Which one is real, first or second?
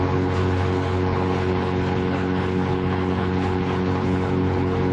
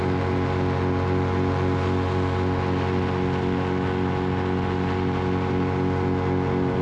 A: second